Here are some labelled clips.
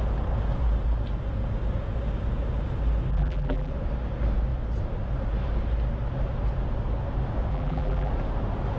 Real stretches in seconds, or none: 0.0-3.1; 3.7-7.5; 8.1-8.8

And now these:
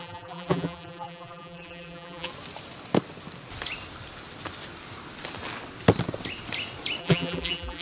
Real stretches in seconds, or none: 2.3-7.0

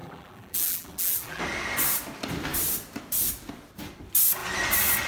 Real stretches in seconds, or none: 1.4-5.1

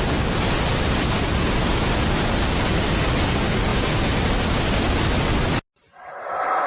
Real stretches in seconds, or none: 0.0-6.7